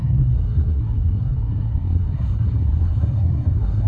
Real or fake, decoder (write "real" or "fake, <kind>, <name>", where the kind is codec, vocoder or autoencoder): fake, codec, SNAC